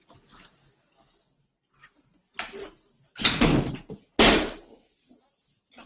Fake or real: real